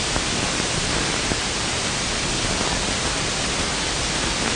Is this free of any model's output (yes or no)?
yes